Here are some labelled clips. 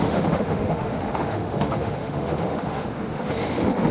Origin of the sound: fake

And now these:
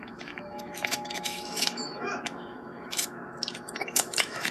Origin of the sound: fake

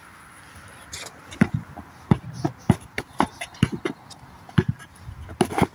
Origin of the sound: real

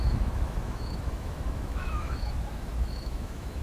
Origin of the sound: fake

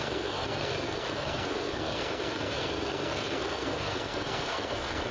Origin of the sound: fake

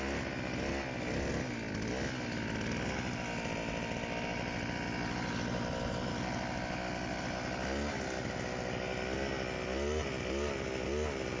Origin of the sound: real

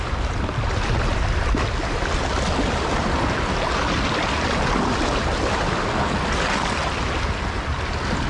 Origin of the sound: real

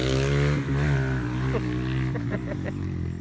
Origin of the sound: real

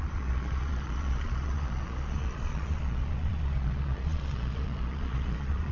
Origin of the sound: fake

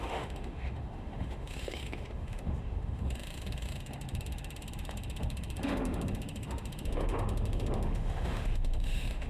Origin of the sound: fake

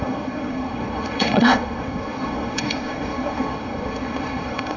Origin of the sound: fake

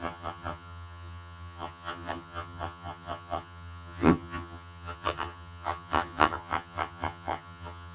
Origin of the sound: fake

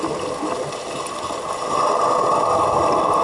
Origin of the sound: real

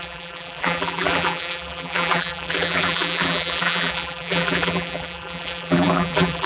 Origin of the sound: fake